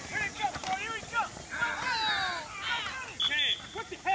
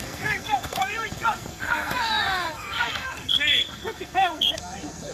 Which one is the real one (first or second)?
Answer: first